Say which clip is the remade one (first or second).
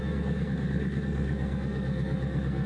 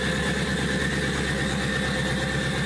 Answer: first